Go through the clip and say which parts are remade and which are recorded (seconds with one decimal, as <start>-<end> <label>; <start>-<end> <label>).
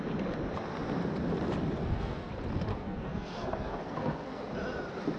0.0-1.8 recorded; 1.8-2.3 remade; 2.3-2.7 recorded; 2.7-4.5 remade; 4.5-5.2 recorded